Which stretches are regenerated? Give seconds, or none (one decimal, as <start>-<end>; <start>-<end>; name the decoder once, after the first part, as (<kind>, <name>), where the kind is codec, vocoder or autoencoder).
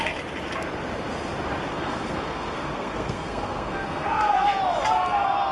1.7-4.5 (codec, SNAC)